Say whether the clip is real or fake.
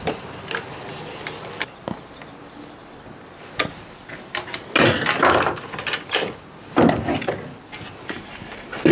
real